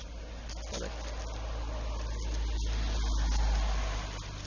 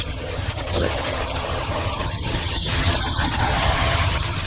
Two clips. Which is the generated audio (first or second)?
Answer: second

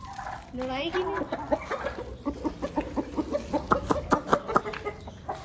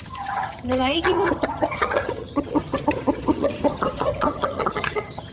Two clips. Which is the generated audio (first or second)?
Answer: second